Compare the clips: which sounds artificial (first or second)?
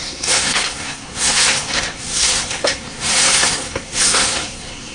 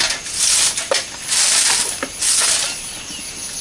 first